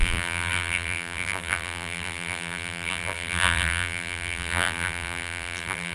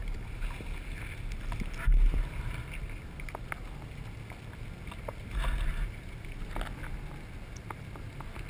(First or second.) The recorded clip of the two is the second